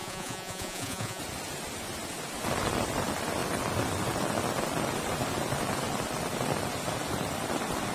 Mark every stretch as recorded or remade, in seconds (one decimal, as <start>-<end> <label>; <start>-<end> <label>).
0.0-1.2 remade; 1.2-7.9 recorded